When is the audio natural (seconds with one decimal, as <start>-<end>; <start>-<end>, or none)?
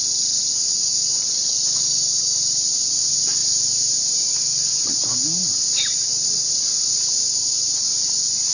0.0-8.5